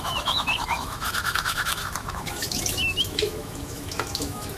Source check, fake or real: fake